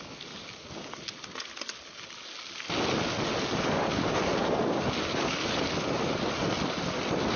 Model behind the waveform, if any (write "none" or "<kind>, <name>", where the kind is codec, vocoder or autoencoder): none